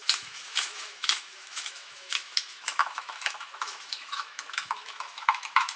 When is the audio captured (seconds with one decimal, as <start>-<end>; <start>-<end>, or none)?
none